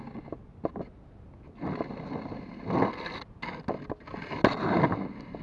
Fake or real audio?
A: real